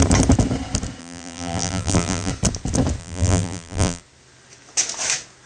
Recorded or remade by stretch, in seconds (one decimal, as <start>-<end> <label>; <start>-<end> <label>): 0.0-1.0 recorded; 1.0-2.3 remade; 2.3-3.0 recorded; 3.0-4.0 remade; 4.0-5.5 recorded